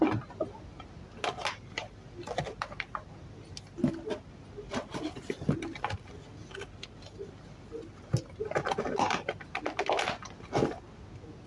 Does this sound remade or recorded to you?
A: recorded